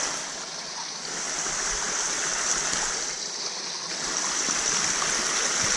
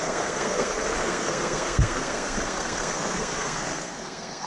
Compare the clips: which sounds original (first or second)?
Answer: first